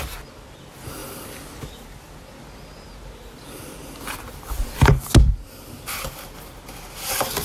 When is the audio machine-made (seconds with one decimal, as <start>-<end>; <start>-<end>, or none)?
none